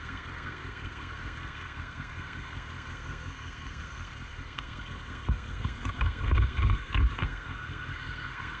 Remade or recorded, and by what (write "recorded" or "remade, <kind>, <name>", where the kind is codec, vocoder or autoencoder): remade, codec, SNAC